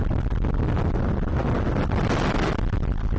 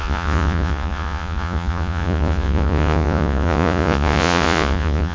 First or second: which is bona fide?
first